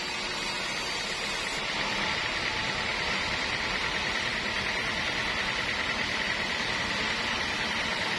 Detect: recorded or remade recorded